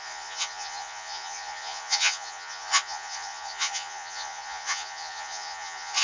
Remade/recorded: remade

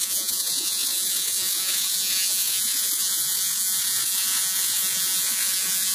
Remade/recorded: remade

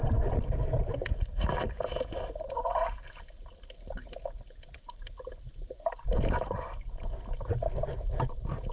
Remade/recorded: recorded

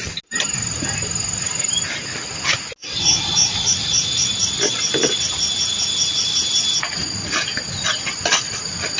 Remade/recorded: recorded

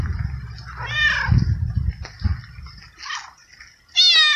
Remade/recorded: recorded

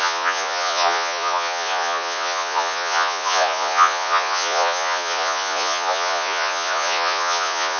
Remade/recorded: remade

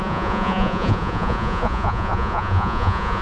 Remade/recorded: remade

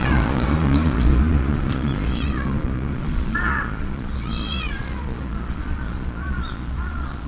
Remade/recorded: remade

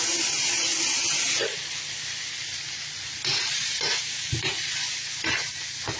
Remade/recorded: recorded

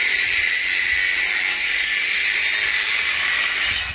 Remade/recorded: recorded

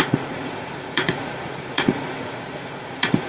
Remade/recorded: remade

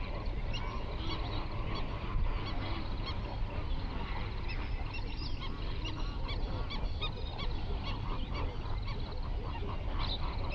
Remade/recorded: recorded